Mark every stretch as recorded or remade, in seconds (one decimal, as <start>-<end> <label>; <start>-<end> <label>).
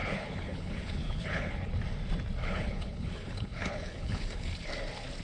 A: 0.0-1.7 remade; 1.7-2.4 recorded; 2.4-4.7 remade; 4.7-5.2 recorded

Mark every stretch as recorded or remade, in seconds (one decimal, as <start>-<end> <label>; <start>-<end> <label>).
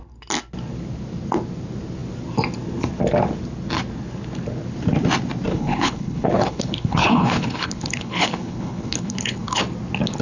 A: 0.0-5.5 recorded; 5.5-9.6 remade; 9.6-10.2 recorded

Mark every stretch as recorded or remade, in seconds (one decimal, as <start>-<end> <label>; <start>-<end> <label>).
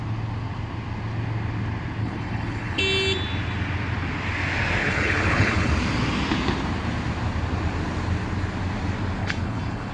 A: 0.0-2.0 recorded; 2.0-2.8 remade; 2.8-4.8 recorded; 4.8-5.7 remade; 5.7-9.2 recorded; 9.2-9.9 remade